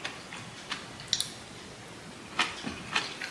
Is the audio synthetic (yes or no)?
no